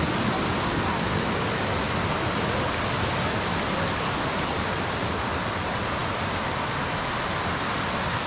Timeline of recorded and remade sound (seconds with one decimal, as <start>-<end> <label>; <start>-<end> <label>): 0.0-8.3 recorded

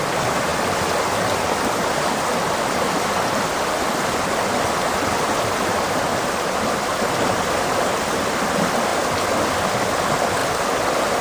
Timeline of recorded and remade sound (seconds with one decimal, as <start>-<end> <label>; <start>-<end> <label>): 0.0-11.2 recorded

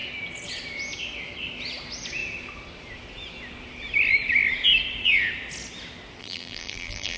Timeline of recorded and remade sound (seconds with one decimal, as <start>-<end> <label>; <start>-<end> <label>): 0.0-6.2 recorded; 6.2-7.2 remade

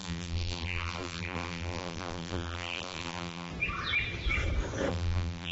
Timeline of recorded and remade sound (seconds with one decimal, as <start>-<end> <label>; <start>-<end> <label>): 0.0-3.5 remade; 3.5-4.9 recorded; 4.9-5.5 remade

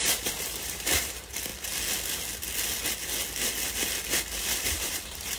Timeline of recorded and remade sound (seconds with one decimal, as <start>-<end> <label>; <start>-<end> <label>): 0.0-1.5 remade; 1.5-4.4 recorded; 4.4-5.4 remade

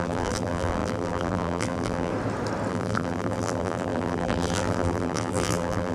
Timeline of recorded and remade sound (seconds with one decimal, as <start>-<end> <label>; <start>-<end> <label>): 0.0-2.1 remade; 2.1-2.7 recorded; 2.7-5.9 remade

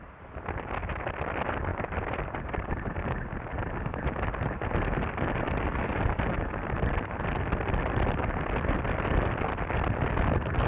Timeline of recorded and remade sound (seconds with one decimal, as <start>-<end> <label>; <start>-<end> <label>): 0.0-1.7 recorded; 1.7-3.7 remade; 3.7-10.7 recorded

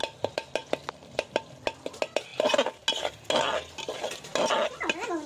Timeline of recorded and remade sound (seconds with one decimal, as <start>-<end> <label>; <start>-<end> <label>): 0.0-0.6 recorded; 0.6-1.4 remade; 1.4-5.3 recorded